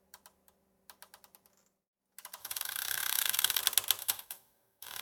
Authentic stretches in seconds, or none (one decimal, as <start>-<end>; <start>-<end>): 0.0-2.4; 3.6-4.0